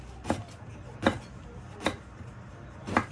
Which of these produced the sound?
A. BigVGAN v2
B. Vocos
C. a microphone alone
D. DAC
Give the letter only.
C